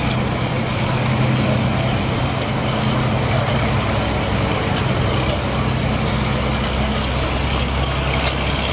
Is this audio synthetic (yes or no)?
no